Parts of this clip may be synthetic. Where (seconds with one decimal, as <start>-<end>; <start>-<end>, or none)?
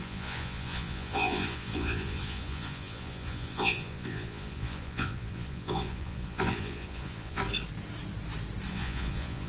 0.0-7.4; 8.7-9.5